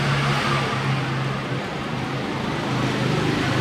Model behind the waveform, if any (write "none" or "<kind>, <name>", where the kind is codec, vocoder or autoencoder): none